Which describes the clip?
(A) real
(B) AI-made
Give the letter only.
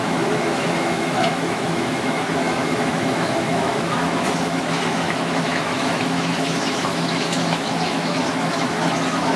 B